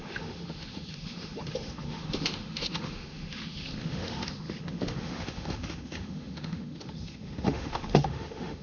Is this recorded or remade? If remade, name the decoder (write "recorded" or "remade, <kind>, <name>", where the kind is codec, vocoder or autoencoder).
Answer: remade, autoencoder, DAC-VAE